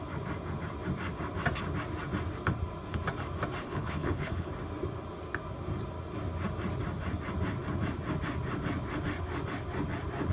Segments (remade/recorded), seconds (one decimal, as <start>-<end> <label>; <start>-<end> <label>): 0.0-3.6 recorded; 3.6-4.5 remade; 4.5-10.3 recorded